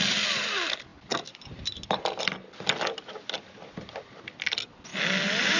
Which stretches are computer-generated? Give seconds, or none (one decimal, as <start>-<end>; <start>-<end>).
none